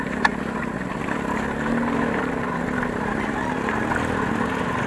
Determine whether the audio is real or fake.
real